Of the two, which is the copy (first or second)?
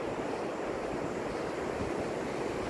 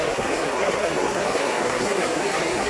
second